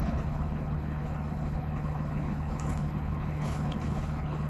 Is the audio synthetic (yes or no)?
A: yes